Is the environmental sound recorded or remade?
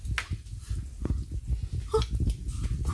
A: recorded